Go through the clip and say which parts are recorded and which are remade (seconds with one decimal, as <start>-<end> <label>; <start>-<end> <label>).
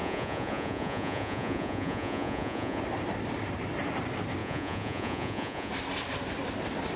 0.0-2.8 remade; 2.8-4.4 recorded; 4.4-5.7 remade; 5.7-7.0 recorded